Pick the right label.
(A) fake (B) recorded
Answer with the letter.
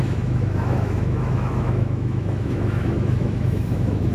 A